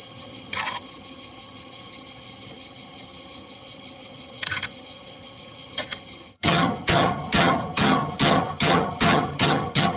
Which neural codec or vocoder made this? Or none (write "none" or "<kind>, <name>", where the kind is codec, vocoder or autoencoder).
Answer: vocoder, HiFi-GAN